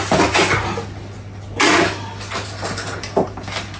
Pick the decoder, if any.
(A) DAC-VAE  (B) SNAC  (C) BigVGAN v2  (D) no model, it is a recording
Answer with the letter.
D